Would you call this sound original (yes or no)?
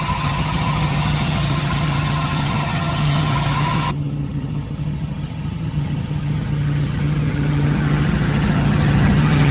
no